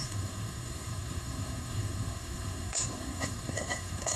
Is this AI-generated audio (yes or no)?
yes